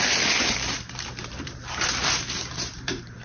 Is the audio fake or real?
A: fake